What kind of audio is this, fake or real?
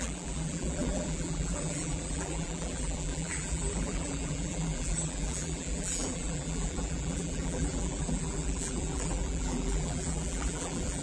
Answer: fake